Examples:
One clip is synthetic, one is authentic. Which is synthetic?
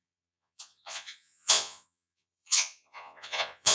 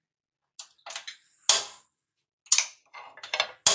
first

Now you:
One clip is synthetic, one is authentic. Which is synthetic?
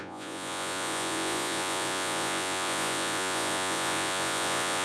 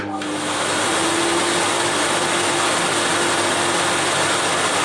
first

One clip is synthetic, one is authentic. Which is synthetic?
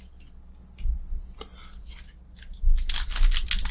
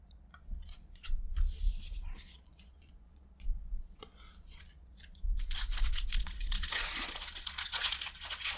second